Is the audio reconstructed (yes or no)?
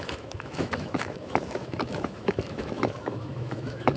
yes